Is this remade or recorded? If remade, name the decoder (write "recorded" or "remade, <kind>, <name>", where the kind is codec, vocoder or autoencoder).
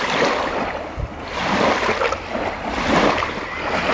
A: recorded